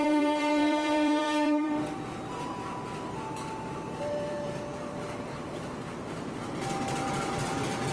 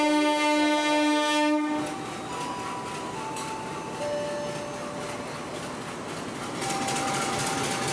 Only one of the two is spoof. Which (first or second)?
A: first